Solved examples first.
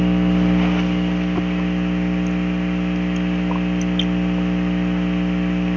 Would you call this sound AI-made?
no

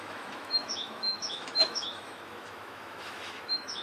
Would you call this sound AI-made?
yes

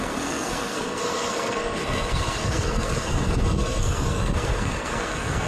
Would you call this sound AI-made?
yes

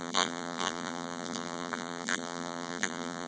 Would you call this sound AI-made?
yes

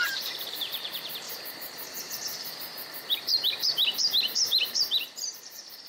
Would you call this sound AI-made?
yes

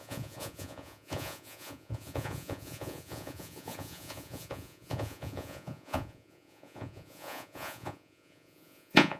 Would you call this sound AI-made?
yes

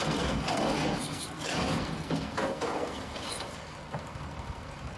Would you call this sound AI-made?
yes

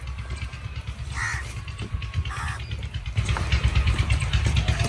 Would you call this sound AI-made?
no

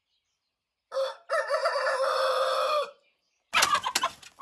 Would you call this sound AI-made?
no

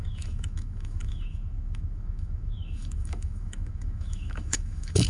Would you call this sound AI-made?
yes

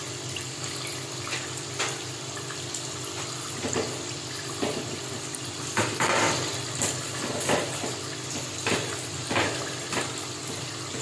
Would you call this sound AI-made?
no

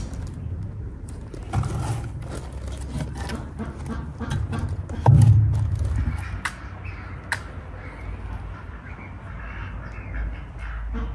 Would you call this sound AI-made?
no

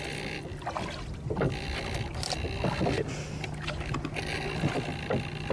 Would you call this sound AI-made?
no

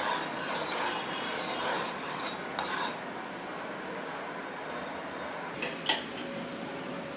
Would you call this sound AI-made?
no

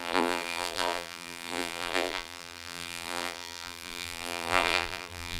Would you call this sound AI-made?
yes